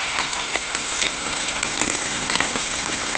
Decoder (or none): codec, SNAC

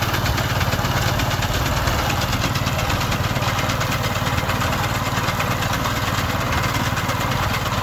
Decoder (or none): none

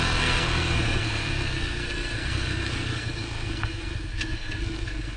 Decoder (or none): codec, SNAC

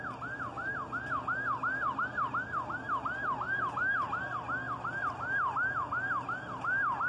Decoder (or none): none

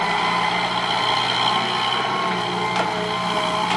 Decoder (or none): none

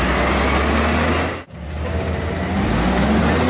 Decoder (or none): none